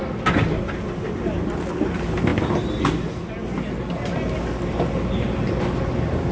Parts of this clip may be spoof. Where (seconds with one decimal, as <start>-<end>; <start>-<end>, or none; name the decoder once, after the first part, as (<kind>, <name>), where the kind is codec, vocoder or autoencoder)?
none